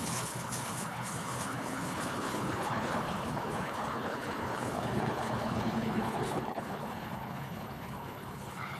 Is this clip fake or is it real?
fake